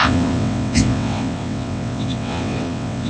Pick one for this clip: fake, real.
fake